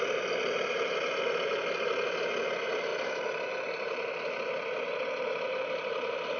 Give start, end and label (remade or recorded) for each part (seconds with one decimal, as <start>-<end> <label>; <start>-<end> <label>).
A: 0.0-6.4 recorded